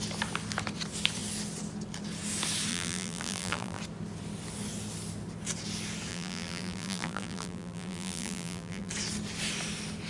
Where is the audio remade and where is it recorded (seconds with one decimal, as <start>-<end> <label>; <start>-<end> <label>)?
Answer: 0.0-2.7 recorded; 2.7-3.8 remade; 3.8-6.1 recorded; 6.1-8.9 remade; 8.9-10.1 recorded